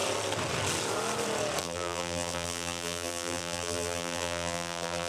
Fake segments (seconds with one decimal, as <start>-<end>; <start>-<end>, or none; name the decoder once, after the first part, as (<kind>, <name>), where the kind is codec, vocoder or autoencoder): 1.6-5.1 (vocoder, BigVGAN v2)